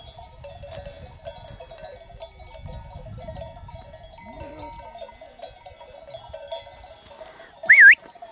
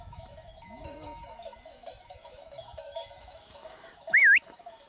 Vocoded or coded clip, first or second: second